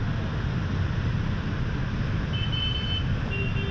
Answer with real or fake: real